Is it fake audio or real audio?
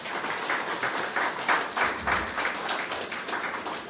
fake